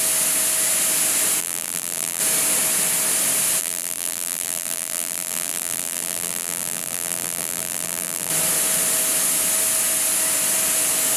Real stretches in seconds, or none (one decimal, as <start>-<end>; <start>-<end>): 0.0-1.4; 2.2-3.6; 8.3-11.2